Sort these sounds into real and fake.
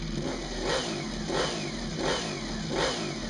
real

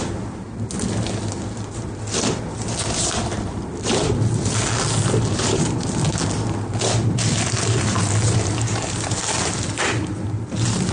real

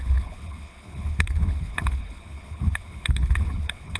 fake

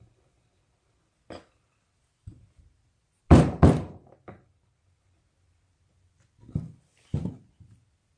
real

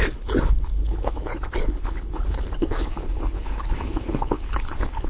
fake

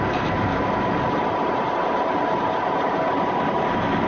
real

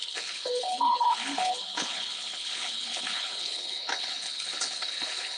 fake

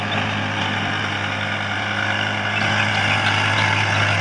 real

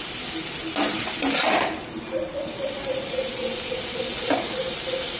real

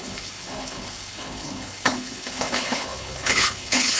fake